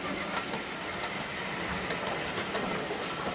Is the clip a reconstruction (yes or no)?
no